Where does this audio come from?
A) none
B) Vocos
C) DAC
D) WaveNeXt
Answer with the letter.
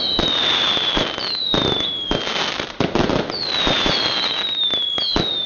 A